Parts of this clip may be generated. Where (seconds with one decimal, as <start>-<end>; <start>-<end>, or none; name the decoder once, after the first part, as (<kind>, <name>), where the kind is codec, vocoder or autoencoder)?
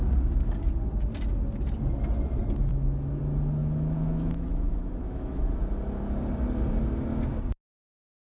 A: 2.7-3.2 (autoencoder, DAC-VAE); 3.6-5.5